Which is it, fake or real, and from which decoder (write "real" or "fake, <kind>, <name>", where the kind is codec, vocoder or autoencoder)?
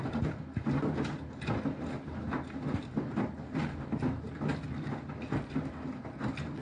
real